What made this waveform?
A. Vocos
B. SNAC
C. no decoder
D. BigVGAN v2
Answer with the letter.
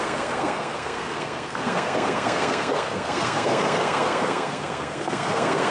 B